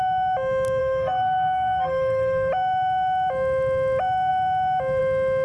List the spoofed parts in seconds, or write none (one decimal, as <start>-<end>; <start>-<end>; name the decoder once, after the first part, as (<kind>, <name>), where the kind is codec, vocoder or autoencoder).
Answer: 0.8-2.5 (codec, SNAC)